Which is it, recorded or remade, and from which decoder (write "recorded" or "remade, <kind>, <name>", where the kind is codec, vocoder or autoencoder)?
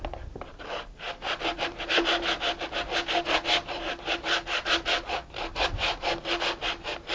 recorded